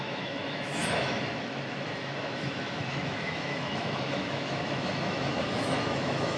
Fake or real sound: fake